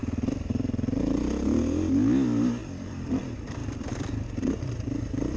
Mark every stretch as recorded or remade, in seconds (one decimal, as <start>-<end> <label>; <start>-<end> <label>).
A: 0.0-5.4 remade